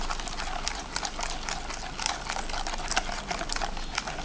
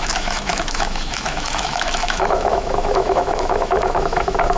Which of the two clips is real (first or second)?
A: first